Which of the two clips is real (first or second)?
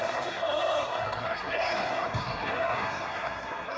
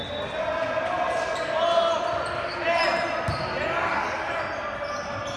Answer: second